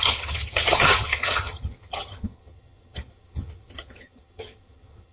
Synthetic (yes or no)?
yes